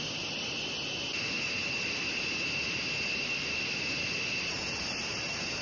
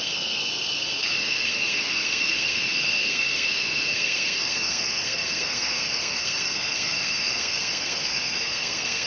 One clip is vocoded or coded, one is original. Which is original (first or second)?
first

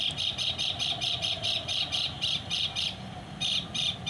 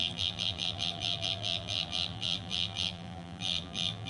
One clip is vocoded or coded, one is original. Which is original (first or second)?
first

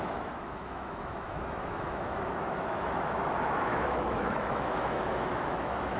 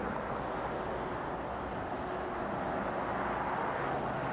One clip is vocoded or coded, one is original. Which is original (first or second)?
second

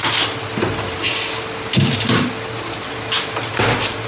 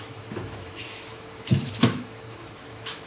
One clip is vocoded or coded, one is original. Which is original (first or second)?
first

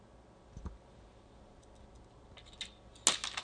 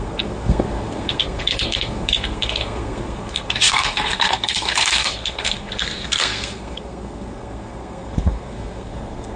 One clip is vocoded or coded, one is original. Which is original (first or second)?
first